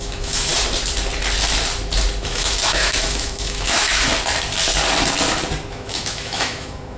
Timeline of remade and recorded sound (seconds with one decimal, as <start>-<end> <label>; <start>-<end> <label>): 0.0-0.5 remade; 0.5-2.2 recorded; 2.2-4.1 remade; 4.1-5.7 recorded; 5.7-7.0 remade